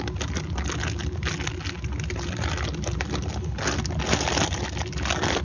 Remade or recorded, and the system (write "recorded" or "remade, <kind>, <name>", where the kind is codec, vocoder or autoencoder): recorded